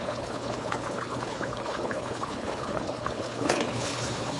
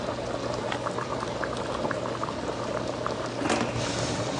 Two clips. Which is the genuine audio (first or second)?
second